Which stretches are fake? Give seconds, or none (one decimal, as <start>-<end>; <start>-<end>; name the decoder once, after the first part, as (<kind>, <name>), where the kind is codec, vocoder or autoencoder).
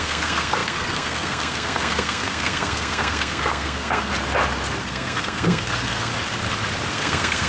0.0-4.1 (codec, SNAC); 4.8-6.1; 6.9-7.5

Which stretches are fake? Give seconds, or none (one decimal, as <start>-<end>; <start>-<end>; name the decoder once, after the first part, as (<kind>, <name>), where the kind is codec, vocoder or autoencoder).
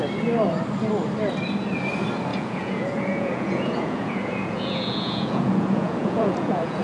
2.3-6.8 (vocoder, Vocos)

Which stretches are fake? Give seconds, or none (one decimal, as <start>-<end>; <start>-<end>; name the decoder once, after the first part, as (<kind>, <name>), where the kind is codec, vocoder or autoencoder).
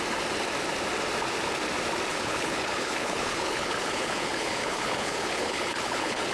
2.1-6.3 (codec, HILCodec)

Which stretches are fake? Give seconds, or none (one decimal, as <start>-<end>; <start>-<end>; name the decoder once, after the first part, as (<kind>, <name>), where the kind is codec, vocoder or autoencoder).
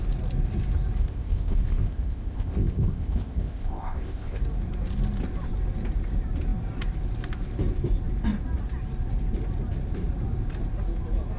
1.0-4.4 (codec, ZipCodec)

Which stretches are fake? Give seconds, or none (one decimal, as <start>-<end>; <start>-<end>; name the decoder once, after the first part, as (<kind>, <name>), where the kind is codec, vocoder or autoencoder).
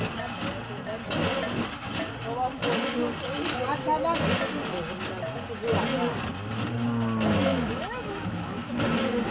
7.5-8.8 (autoencoder, DAC-VAE)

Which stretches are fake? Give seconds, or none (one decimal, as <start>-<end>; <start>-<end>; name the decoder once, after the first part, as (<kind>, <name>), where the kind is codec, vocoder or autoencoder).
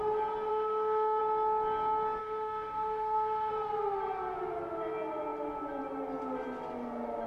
0.5-1.2 (autoencoder, DAC-VAE); 2.2-3.5